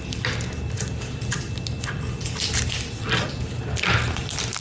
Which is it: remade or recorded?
recorded